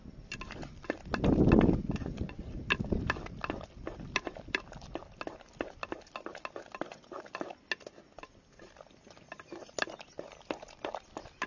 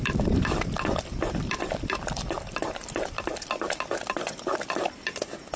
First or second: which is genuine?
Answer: first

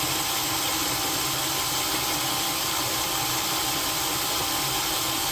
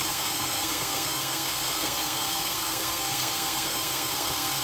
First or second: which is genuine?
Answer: first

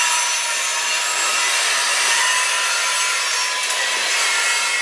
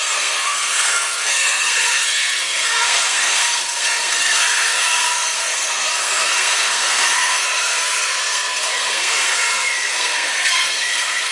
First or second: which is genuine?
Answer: first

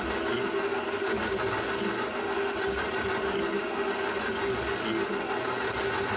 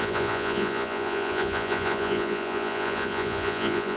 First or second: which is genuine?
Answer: first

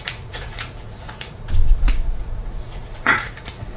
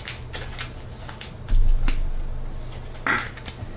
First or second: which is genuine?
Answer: second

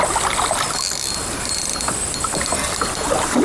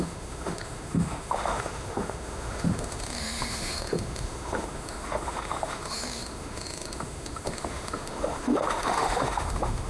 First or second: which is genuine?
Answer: first